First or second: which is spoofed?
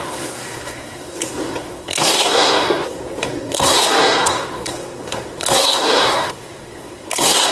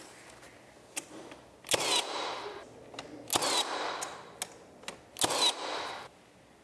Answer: first